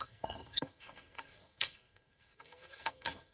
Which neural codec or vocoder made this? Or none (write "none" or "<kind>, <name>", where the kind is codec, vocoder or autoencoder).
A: codec, SNAC